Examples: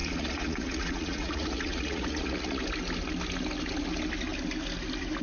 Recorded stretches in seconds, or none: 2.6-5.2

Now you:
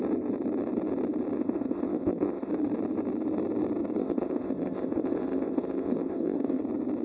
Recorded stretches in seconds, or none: 0.0-1.4; 2.5-4.0; 6.6-7.0

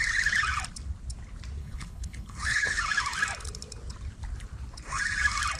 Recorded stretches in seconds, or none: 0.0-1.6; 2.8-5.6

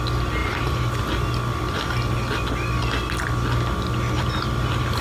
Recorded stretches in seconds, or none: 0.0-0.4; 1.0-5.0

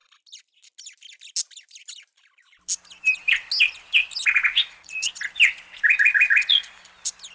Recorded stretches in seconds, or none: 0.0-4.5; 5.1-7.3